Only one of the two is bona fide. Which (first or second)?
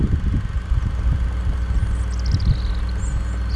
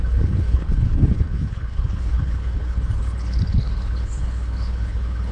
first